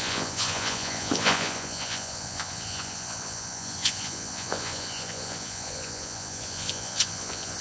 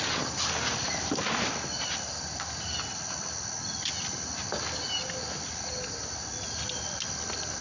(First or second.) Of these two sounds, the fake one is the first